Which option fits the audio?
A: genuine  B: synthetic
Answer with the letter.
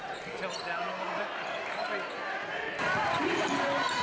A